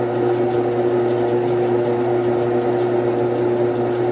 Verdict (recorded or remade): recorded